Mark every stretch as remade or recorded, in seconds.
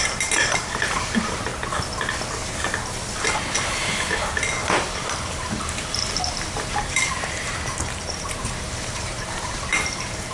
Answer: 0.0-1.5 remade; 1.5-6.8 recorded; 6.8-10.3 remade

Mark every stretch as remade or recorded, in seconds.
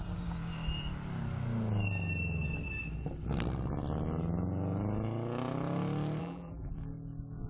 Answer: 0.0-6.2 recorded; 6.2-6.7 remade; 6.7-7.5 recorded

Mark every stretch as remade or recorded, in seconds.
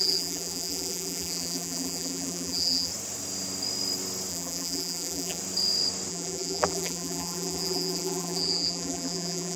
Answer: 0.0-2.9 remade; 2.9-4.3 recorded; 4.3-5.4 remade; 5.4-6.1 recorded; 6.1-9.6 remade